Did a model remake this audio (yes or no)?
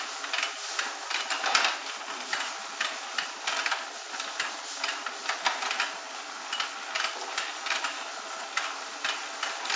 no